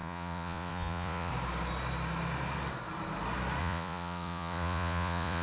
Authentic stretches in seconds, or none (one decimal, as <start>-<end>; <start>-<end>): 1.3-3.6